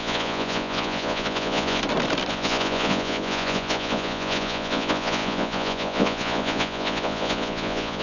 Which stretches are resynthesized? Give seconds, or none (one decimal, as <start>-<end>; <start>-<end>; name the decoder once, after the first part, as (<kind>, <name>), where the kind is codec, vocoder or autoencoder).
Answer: 0.0-1.8 (vocoder, Vocos); 2.3-8.0